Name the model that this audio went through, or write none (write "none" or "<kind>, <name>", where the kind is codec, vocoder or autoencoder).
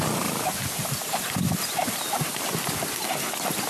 none